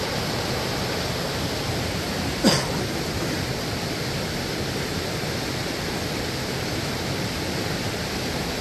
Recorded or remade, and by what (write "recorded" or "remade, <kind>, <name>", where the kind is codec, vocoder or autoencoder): recorded